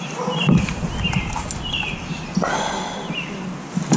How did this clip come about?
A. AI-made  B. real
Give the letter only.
B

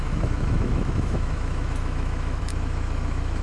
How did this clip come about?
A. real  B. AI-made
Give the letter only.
B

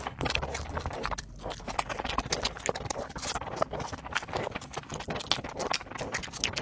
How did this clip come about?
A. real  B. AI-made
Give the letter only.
A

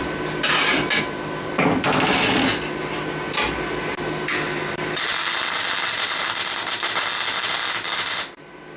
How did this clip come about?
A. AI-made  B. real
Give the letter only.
B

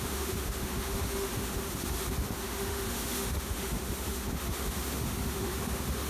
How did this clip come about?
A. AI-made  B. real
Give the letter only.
A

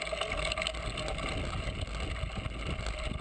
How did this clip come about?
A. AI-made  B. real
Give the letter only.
B